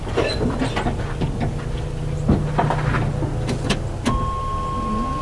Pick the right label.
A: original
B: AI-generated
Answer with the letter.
A